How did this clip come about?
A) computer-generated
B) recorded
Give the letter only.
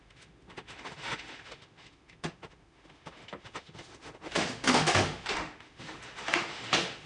A